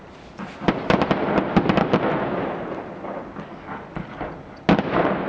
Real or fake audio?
real